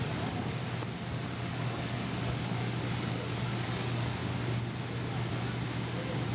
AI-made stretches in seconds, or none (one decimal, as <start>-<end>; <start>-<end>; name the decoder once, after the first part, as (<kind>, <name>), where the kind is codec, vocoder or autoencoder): 0.0-0.6 (codec, DAC); 1.5-4.2